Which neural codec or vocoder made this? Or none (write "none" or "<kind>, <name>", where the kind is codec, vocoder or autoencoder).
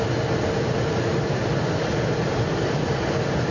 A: none